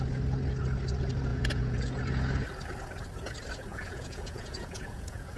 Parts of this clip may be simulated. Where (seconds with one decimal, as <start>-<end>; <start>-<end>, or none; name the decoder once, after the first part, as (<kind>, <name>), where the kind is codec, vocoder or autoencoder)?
1.3-2.0 (vocoder, Vocos); 3.7-5.4